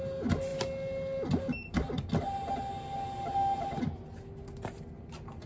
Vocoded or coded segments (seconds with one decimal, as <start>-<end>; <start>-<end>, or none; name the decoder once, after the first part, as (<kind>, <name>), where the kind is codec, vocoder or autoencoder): none